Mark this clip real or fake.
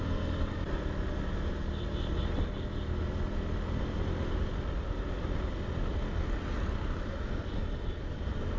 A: real